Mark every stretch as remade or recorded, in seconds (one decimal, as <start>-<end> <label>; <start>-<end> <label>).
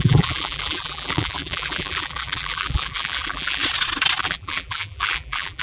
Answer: 0.0-3.6 remade; 3.6-4.2 recorded; 4.2-5.6 remade